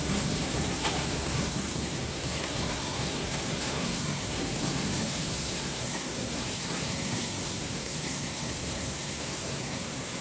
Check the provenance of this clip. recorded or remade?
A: remade